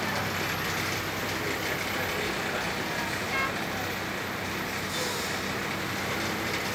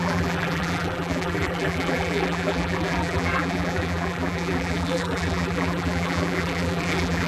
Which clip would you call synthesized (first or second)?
second